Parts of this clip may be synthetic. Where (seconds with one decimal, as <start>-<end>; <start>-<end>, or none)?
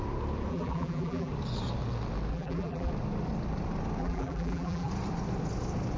0.5-1.3; 2.3-2.9; 4.0-4.9